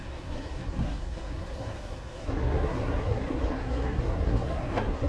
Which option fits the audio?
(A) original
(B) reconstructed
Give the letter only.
B